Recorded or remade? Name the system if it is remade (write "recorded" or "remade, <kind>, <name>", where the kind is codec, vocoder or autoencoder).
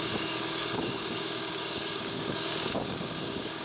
remade, codec, DAC